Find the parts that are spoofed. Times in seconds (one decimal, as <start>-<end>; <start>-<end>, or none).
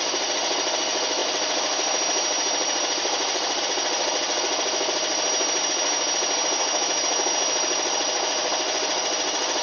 none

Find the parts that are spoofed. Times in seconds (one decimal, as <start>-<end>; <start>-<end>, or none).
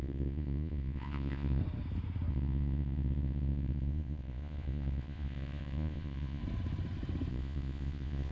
0.0-1.6; 2.3-6.4; 7.3-8.3